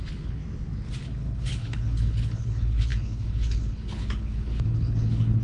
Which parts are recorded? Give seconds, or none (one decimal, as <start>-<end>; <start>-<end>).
0.4-1.0